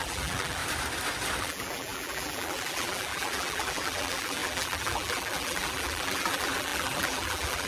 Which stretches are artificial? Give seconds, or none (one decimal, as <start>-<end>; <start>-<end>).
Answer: 0.0-0.6; 1.4-7.7